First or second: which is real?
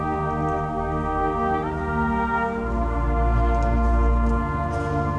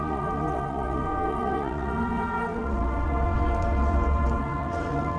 first